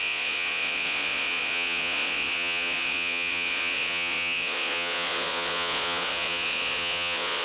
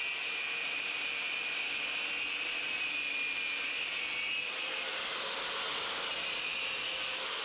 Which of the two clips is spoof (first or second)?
first